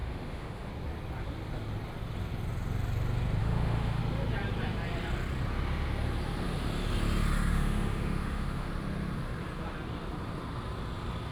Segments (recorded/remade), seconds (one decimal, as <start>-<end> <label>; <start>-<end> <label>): 0.0-0.7 remade; 0.7-3.4 recorded; 3.4-4.0 remade; 4.0-7.5 recorded; 7.5-8.7 remade; 8.7-11.3 recorded